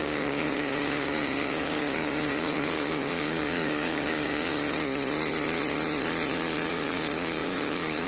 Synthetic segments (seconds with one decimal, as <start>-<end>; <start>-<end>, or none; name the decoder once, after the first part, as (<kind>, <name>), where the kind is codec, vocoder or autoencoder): 0.0-4.5 (codec, DAC); 6.7-8.1